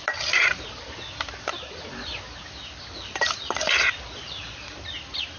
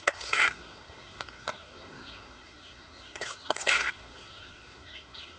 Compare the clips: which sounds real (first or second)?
first